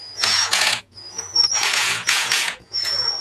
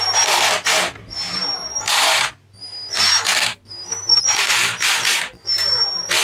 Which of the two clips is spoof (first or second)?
first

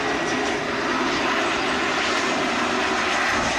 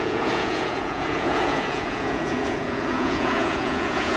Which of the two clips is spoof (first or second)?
second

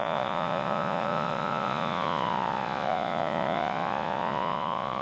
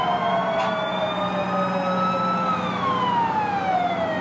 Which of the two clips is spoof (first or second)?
first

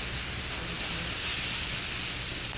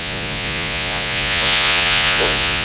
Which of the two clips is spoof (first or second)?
second